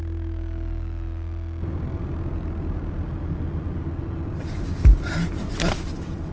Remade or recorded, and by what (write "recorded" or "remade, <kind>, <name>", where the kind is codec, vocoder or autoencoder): recorded